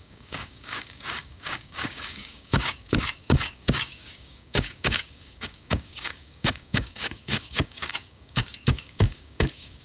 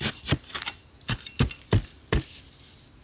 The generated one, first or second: first